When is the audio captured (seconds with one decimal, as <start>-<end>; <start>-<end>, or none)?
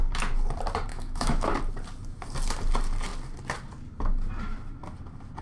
0.0-0.9; 1.5-5.4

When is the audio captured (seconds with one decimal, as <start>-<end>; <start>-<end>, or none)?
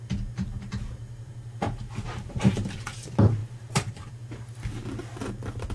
0.0-1.0; 2.8-3.4; 4.1-5.7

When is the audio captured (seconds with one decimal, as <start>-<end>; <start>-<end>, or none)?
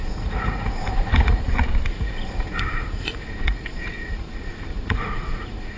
1.4-1.9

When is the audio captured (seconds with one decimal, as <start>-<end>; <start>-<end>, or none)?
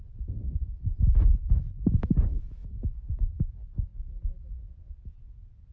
0.0-5.7